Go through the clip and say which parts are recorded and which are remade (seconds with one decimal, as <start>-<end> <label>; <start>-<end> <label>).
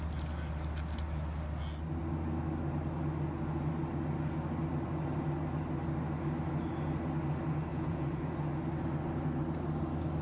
0.0-7.7 recorded; 7.7-8.2 remade; 8.2-10.2 recorded